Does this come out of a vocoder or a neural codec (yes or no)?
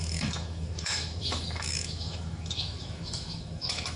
yes